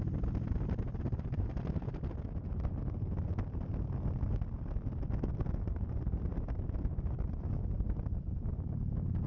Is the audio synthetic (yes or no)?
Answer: no